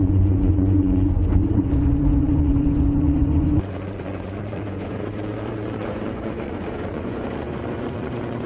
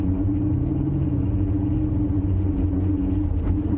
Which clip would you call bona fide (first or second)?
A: second